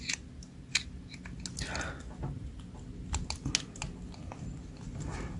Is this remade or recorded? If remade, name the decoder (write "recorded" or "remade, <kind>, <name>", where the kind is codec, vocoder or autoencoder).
recorded